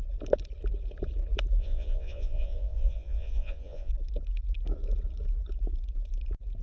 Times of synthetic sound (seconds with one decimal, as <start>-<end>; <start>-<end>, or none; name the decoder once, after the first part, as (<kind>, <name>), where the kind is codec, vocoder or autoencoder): 1.6-3.9 (vocoder, Vocos)